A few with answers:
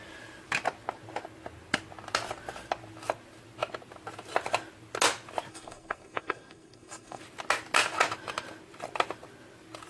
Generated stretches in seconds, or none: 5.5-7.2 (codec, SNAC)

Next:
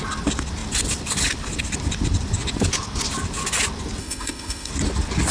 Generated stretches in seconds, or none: 4.0-4.7 (autoencoder, DAC-VAE)

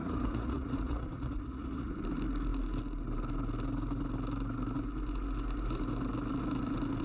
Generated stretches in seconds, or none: 0.0-2.0 (vocoder, Vocos)